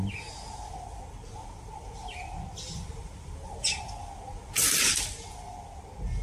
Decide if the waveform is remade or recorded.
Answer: recorded